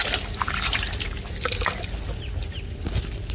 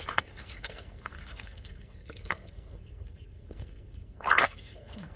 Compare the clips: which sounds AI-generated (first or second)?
second